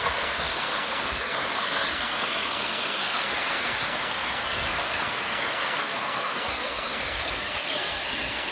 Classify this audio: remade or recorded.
remade